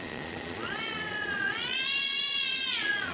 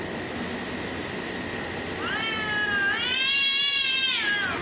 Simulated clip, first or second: first